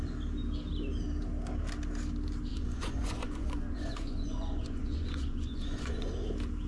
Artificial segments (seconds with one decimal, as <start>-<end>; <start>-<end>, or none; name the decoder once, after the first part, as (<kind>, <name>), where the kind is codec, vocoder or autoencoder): 2.5-6.1 (vocoder, Vocos)